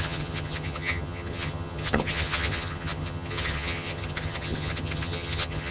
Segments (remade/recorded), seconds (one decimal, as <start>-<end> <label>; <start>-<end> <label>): 0.0-5.7 remade